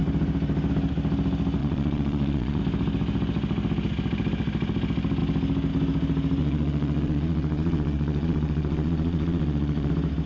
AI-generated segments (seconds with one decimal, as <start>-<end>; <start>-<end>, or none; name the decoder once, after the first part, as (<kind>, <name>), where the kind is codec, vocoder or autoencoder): 1.6-2.6 (vocoder, Vocos); 6.4-9.9